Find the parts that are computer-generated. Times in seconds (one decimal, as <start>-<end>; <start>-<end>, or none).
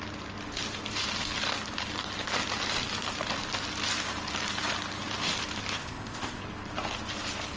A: 5.7-6.4